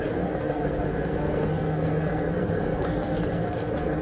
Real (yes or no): no